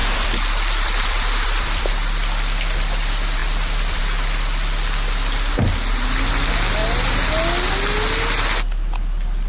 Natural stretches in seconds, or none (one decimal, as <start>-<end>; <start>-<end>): 1.9-3.4; 4.0-9.5